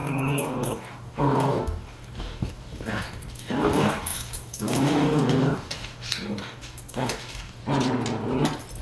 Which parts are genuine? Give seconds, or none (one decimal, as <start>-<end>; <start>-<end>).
7.6-8.8